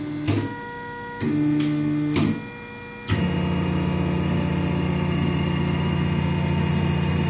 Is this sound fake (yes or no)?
no